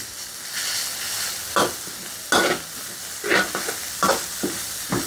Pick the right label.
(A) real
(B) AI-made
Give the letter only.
A